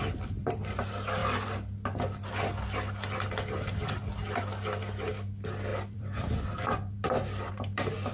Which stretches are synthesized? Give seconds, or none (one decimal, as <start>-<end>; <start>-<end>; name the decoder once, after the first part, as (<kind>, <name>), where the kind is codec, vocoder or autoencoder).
0.0-1.2 (vocoder, BigVGAN v2); 5.1-8.1